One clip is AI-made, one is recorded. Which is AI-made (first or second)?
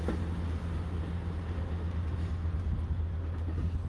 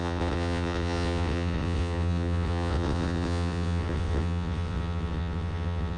second